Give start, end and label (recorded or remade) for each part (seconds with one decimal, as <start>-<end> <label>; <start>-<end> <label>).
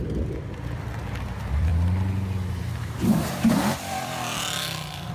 0.0-1.7 remade; 1.7-2.5 recorded; 2.5-5.1 remade